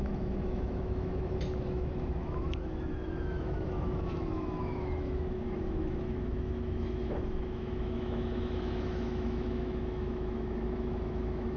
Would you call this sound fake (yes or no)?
yes